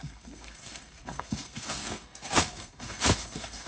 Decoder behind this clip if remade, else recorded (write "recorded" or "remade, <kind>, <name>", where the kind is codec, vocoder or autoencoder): remade, codec, SNAC